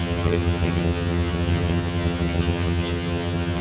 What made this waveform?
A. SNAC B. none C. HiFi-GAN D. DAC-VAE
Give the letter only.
C